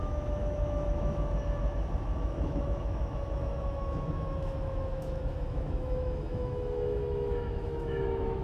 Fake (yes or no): yes